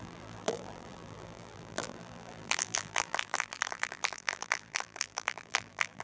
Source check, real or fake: fake